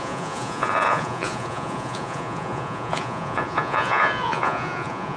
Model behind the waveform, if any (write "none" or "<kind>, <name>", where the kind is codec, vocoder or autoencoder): vocoder, Vocos